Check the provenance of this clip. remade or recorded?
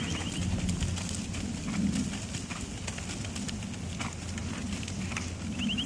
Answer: recorded